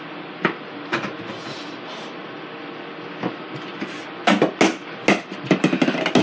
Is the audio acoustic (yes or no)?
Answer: yes